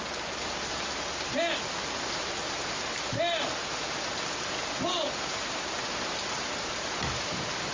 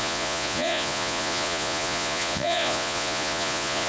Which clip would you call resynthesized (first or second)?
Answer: second